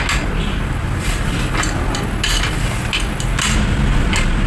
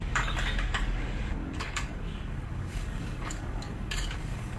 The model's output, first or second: second